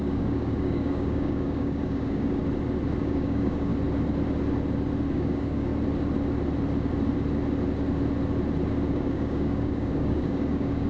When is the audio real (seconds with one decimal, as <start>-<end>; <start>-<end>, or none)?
2.4-3.0; 3.7-5.1; 5.7-8.9